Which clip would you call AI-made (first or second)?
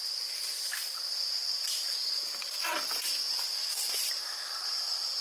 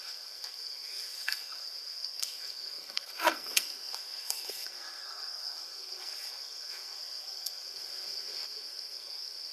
second